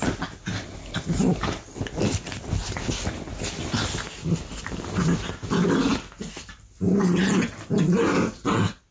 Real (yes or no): yes